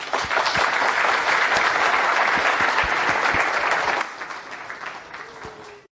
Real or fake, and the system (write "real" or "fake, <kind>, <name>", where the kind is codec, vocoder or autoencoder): real